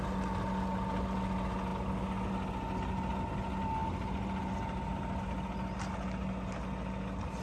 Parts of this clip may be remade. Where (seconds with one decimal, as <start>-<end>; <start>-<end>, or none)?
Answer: none